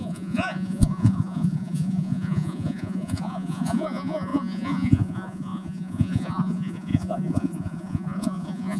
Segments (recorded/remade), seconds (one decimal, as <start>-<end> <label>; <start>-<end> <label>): 0.0-8.8 remade

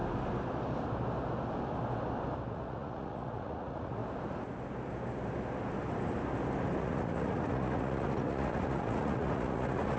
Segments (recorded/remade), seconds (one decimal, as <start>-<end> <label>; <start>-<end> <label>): 0.0-2.5 recorded; 2.5-4.0 remade; 4.0-6.8 recorded; 6.8-10.0 remade

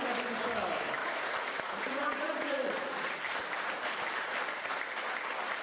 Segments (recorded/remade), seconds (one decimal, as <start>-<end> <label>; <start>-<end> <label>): 0.0-1.0 recorded; 1.0-3.2 remade; 3.2-5.6 recorded

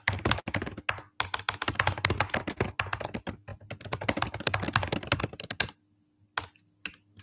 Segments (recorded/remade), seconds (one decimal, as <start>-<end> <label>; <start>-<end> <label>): 0.0-7.2 recorded

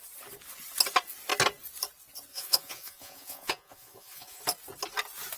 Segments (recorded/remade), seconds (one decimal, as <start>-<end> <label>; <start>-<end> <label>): 0.0-2.3 recorded; 2.3-4.4 remade; 4.4-5.4 recorded

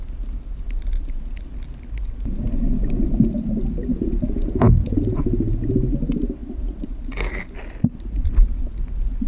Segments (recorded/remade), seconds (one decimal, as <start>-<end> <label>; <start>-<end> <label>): 0.0-3.9 recorded; 3.9-5.7 remade; 5.7-9.3 recorded